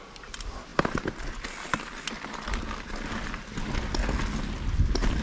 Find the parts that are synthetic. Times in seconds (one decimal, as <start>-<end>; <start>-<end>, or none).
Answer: none